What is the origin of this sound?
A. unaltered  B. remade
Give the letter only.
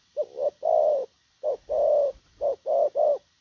A